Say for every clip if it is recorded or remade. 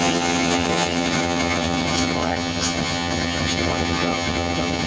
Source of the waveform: remade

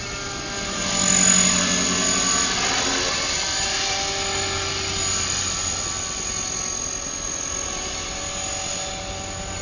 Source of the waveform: recorded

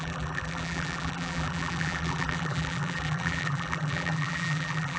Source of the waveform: remade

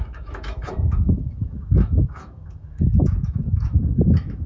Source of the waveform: remade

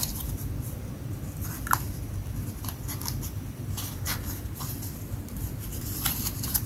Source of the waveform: remade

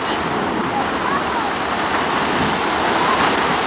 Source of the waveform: recorded